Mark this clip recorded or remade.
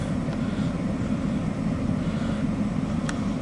recorded